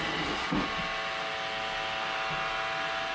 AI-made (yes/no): no